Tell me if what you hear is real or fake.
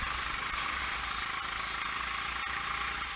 real